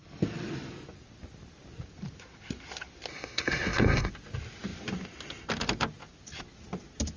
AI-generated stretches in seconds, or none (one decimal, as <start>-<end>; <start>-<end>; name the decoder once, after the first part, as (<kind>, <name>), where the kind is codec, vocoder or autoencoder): 3.1-4.1 (codec, SNAC)

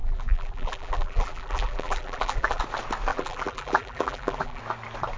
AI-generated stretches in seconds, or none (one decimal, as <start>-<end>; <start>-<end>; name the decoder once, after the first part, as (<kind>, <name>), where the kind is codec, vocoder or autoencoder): 0.0-2.6 (vocoder, BigVGAN v2); 3.1-4.6

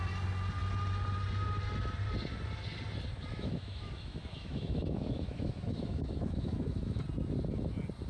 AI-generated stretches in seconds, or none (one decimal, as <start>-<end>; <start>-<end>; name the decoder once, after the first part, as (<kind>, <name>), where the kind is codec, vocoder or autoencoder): 3.3-7.0 (autoencoder, DAC-VAE)

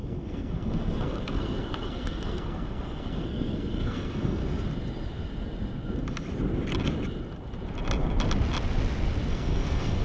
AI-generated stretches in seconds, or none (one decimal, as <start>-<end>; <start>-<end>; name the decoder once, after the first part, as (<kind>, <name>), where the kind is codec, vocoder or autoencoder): 0.0-4.4 (codec, SNAC); 9.3-10.0

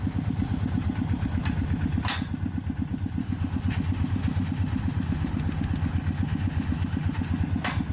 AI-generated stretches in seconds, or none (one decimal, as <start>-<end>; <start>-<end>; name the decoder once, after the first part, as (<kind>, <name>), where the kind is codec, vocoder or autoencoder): 3.2-7.4 (autoencoder, DAC-VAE)

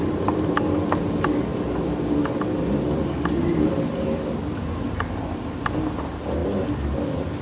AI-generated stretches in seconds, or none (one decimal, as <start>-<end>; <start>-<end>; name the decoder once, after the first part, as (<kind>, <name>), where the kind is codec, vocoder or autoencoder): none